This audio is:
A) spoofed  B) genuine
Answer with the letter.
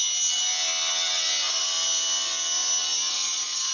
B